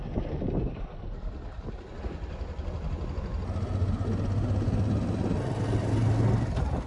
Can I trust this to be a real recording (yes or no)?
yes